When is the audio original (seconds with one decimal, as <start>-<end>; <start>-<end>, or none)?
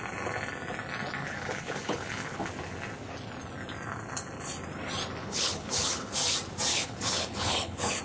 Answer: 0.0-1.2; 2.5-5.2; 6.1-6.7